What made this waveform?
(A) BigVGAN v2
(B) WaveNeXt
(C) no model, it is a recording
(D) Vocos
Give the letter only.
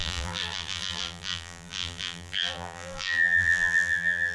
A